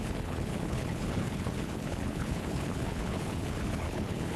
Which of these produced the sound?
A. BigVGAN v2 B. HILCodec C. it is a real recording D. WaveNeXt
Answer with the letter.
B